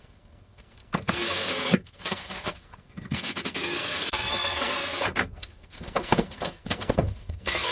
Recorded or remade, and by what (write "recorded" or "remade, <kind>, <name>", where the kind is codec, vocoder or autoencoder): remade, codec, SNAC